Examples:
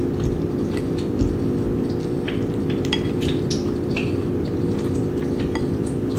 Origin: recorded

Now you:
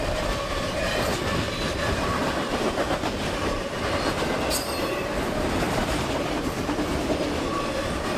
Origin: recorded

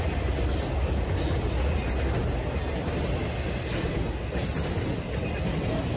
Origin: recorded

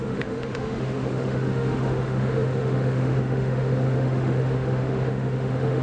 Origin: remade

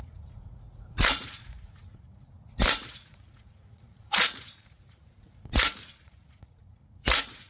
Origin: remade